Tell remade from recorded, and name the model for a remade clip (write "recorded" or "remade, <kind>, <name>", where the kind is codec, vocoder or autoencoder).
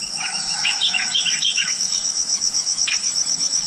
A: remade, autoencoder, DAC-VAE